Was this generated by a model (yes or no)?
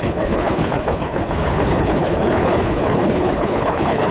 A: yes